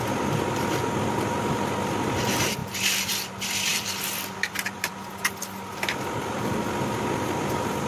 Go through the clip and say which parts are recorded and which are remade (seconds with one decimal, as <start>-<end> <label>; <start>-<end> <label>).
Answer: 0.0-3.7 recorded; 3.7-4.9 remade; 4.9-7.9 recorded